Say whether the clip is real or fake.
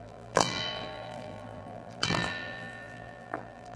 fake